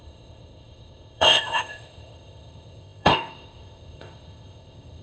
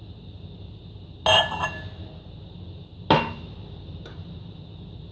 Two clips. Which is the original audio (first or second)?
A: second